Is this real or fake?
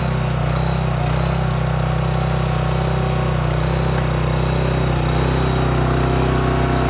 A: real